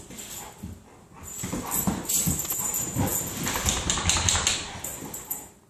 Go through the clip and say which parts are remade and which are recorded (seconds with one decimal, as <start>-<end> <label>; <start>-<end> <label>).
0.0-4.9 recorded; 4.9-5.7 remade